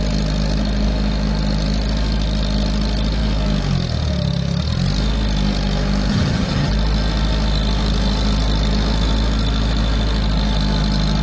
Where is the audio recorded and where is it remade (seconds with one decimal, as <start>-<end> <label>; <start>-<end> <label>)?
0.0-6.1 recorded; 6.1-6.7 remade; 6.7-11.2 recorded